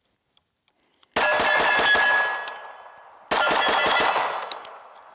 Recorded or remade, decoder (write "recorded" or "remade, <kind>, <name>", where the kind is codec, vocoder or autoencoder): recorded